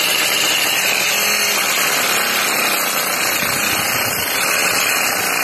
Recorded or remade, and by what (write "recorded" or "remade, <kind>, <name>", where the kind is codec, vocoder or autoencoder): recorded